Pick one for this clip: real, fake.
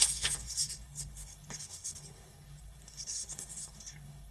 fake